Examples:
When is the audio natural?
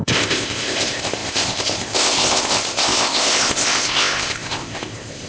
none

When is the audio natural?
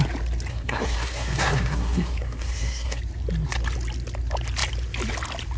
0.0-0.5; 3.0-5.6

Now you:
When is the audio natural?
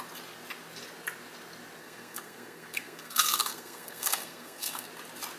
0.0-1.8; 4.9-5.4